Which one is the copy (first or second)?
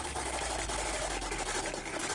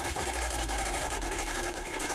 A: second